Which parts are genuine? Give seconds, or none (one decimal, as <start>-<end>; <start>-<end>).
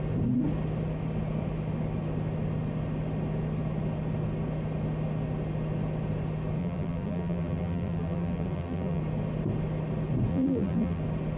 0.0-6.6; 9.0-10.3; 11.0-11.4